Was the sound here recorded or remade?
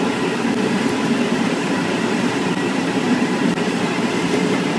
remade